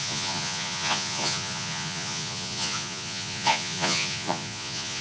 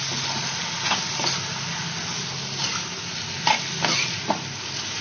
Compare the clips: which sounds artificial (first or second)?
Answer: first